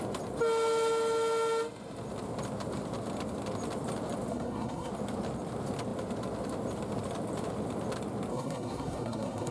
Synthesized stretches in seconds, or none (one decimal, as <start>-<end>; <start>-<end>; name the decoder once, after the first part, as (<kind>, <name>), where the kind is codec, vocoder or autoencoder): 4.3-4.9 (codec, SNAC); 8.3-9.5